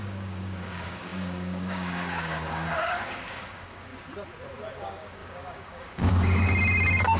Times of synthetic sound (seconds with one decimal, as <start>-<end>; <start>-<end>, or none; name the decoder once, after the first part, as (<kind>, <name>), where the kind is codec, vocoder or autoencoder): 0.0-3.9 (codec, DAC); 4.8-7.2